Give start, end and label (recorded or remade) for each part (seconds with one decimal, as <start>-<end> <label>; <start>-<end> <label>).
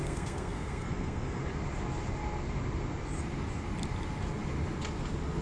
0.0-1.4 remade; 1.4-5.4 recorded